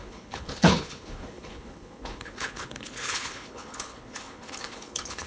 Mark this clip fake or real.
fake